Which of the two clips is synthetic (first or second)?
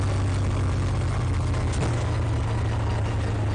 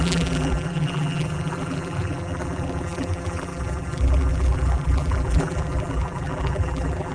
second